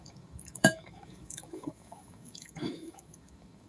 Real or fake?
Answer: fake